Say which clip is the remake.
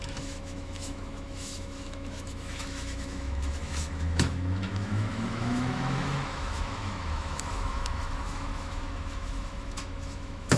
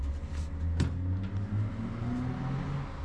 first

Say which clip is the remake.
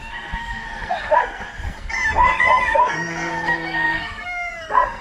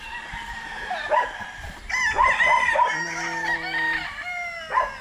first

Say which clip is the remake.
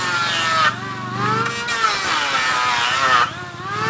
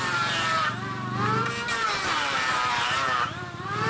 second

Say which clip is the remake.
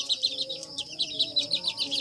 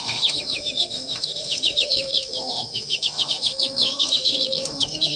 second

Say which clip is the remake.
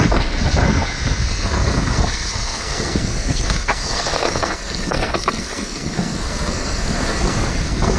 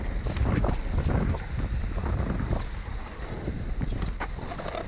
first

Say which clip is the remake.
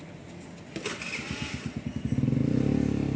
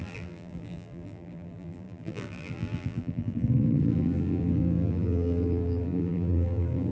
second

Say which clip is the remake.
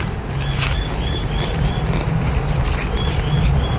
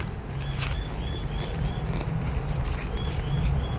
first